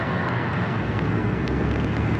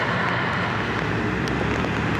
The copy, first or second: first